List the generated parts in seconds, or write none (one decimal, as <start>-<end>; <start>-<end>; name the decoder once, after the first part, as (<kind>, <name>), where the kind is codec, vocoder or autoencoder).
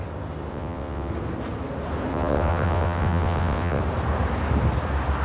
0.5-1.1 (vocoder, WaveNeXt); 2.1-3.8